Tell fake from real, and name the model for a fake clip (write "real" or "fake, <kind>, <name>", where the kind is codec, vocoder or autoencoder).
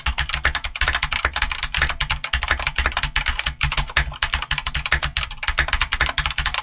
real